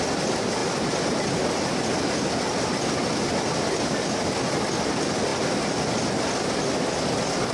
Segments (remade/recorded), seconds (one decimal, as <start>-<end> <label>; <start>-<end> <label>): 0.0-7.5 recorded